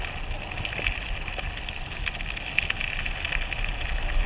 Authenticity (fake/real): real